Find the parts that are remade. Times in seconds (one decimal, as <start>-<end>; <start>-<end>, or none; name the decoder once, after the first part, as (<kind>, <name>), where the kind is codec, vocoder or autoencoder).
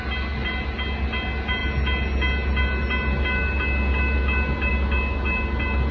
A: none